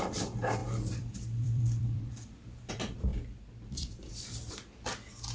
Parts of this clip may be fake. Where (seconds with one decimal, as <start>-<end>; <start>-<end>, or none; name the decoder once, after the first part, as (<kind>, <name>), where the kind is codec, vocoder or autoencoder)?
0.0-3.1 (vocoder, BigVGAN v2); 4.1-5.3